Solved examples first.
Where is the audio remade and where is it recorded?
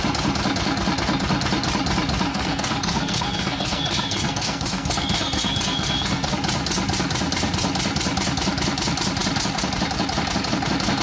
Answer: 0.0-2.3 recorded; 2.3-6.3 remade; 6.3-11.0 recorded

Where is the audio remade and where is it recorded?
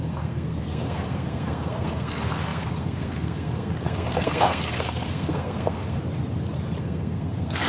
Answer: 0.0-6.0 remade; 6.0-6.8 recorded; 6.8-7.7 remade